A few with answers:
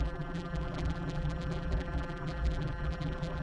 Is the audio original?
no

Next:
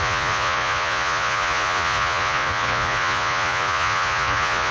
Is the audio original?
no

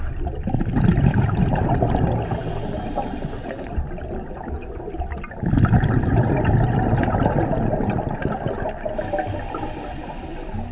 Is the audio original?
yes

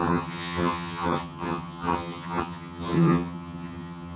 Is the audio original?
no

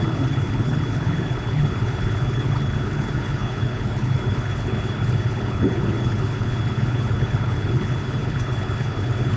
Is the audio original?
no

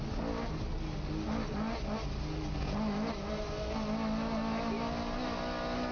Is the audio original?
yes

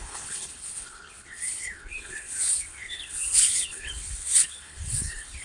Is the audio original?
no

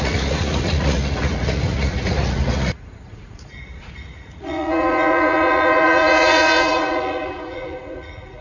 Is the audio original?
no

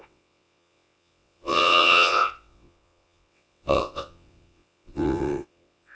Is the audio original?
no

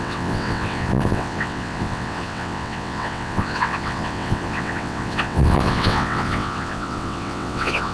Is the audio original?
no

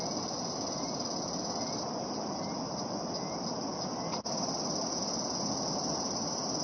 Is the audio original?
yes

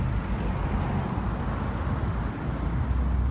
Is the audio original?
yes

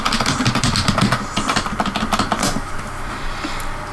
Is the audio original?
yes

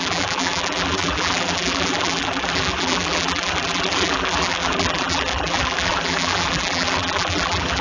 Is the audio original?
no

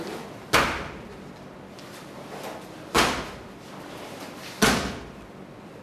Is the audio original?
yes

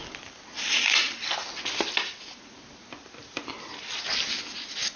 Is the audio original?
yes